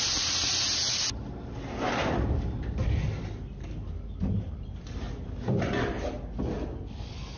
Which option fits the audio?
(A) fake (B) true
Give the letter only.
B